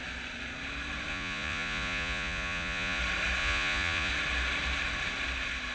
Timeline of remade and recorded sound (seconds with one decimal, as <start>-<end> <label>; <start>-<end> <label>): 0.0-1.1 recorded; 1.1-3.0 remade; 3.0-3.4 recorded; 3.4-4.1 remade; 4.1-5.7 recorded